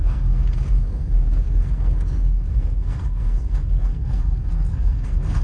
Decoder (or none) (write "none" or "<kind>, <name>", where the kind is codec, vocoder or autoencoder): codec, SNAC